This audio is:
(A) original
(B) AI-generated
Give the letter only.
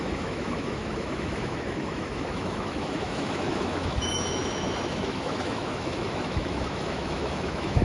B